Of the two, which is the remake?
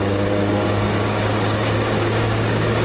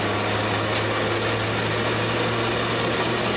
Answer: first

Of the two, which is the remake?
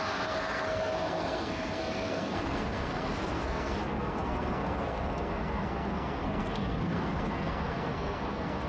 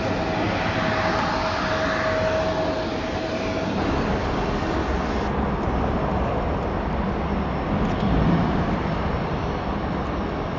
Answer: first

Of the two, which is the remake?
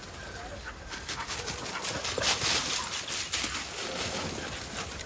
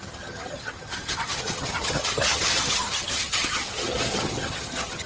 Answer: second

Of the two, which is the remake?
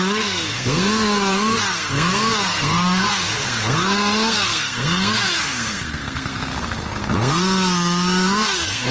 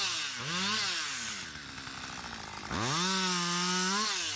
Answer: first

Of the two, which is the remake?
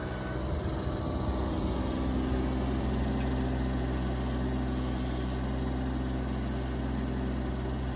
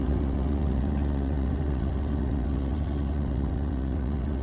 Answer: second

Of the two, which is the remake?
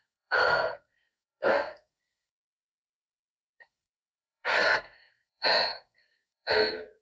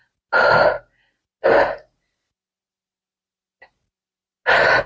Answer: first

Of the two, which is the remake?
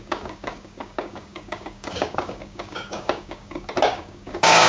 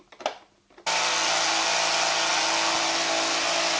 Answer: first